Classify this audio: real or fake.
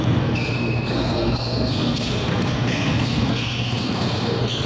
fake